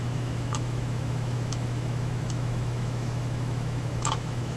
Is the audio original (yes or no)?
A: no